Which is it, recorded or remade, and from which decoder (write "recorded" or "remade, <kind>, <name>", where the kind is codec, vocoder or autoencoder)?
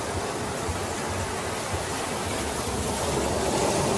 recorded